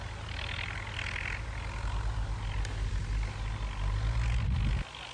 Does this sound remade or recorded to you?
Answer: recorded